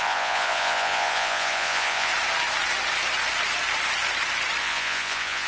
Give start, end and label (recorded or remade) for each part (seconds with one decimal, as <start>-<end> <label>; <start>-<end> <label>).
0.0-2.1 remade; 2.1-4.6 recorded; 4.6-5.5 remade